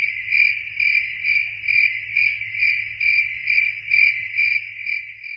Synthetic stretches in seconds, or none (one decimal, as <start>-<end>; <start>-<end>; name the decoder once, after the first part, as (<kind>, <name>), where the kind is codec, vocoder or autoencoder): none